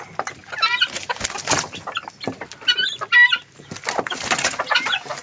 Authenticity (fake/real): real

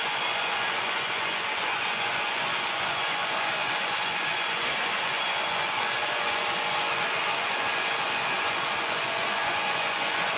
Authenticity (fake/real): fake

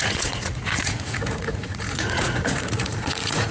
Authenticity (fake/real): fake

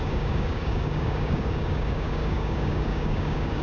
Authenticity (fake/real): fake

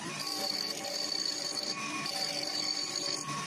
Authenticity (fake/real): fake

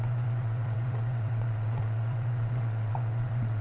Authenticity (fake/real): fake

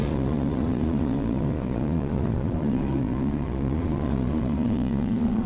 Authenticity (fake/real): fake